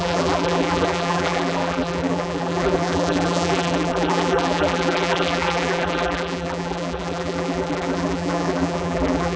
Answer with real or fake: fake